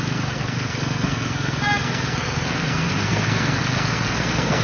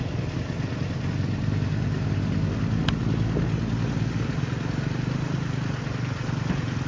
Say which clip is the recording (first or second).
second